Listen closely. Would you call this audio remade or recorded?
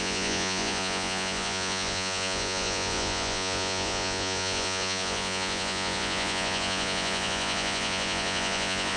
remade